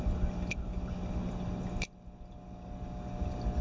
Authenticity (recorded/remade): recorded